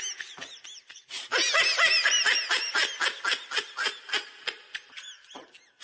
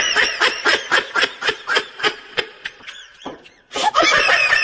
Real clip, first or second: first